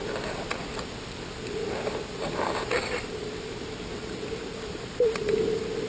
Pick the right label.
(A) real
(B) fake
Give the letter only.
A